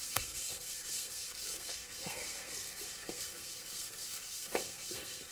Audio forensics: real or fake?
fake